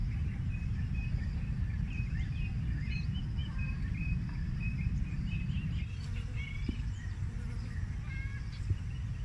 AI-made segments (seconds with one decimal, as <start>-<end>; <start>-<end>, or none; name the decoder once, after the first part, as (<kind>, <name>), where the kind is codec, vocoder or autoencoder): 0.0-2.5 (vocoder, BigVGAN v2); 3.4-7.9